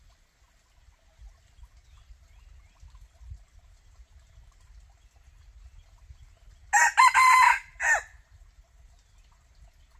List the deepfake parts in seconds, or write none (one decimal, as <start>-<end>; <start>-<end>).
none